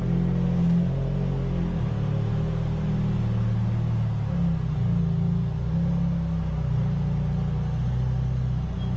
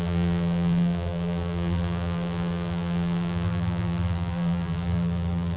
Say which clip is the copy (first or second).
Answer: second